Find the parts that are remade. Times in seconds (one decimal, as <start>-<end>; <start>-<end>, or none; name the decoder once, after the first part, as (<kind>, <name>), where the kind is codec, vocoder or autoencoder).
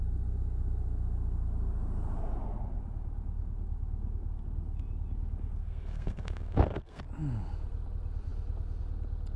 5.6-7.0 (codec, SNAC)